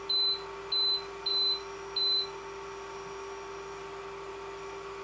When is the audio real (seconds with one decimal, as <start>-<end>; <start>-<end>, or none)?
0.0-5.0